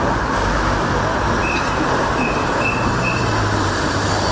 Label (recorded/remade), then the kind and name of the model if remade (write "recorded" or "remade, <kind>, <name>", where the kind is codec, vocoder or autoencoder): remade, vocoder, BigVGAN v2